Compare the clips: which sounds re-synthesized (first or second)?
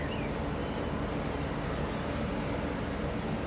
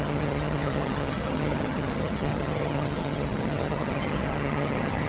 second